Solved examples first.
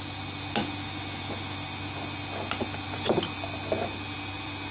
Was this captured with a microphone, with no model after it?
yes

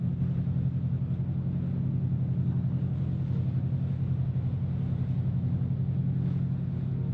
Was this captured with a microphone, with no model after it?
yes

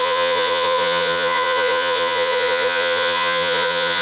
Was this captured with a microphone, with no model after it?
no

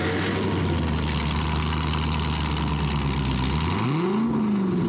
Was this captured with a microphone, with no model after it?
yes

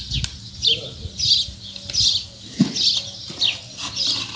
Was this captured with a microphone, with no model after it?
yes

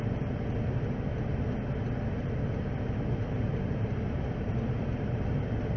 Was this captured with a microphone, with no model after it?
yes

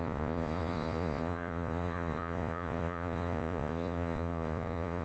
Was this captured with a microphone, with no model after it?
no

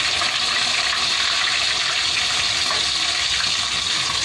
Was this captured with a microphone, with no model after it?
yes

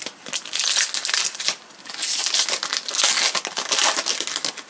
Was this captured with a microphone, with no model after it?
yes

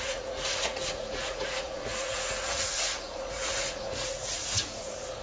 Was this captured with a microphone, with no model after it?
no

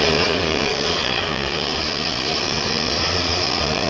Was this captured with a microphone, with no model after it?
no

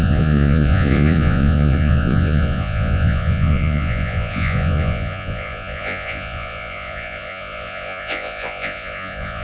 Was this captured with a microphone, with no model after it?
no